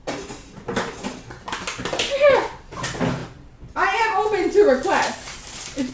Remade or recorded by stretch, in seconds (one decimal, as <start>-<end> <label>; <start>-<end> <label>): 0.0-0.6 remade; 0.6-5.9 recorded